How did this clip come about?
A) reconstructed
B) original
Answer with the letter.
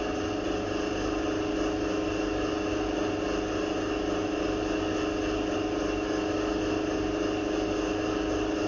B